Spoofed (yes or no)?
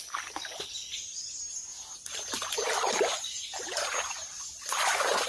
no